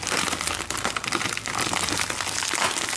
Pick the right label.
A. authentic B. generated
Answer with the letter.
A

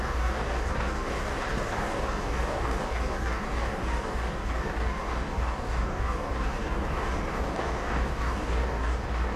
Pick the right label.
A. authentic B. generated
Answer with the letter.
B